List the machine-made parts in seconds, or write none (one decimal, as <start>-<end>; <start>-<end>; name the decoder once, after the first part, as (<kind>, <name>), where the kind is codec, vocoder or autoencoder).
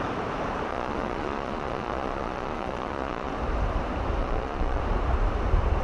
0.7-3.3 (vocoder, Vocos); 4.2-4.8